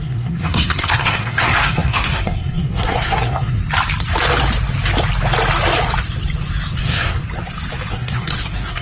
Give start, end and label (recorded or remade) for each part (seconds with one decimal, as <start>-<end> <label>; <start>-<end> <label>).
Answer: 0.0-3.6 remade; 3.6-6.8 recorded; 6.8-7.2 remade; 7.2-7.9 recorded; 7.9-8.8 remade